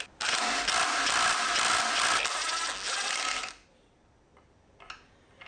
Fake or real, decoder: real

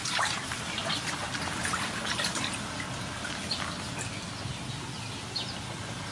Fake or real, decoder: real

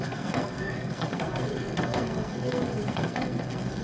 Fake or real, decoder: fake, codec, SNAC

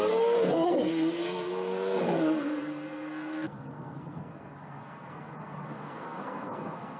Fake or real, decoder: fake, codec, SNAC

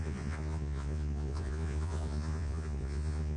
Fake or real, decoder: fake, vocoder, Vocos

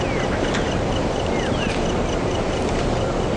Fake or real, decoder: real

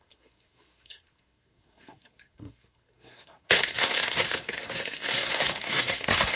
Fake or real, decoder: fake, codec, SNAC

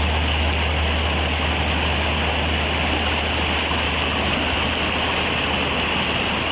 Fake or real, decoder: real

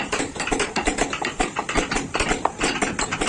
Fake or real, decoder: real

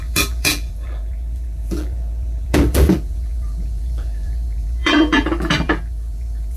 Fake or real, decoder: fake, vocoder, BigVGAN v2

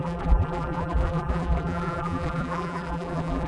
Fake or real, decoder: fake, vocoder, BigVGAN v2